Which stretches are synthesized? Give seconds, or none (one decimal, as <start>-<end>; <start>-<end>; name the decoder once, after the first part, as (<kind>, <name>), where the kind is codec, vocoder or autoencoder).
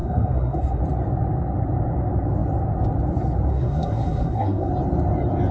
0.0-0.8 (codec, SNAC); 3.5-4.7